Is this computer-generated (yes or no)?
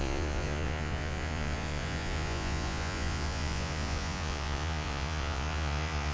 yes